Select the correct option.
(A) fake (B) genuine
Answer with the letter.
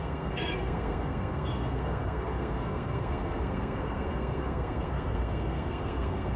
A